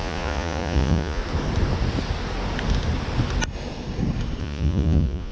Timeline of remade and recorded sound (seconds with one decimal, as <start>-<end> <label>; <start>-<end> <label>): 0.0-1.2 remade; 1.2-4.4 recorded; 4.4-5.3 remade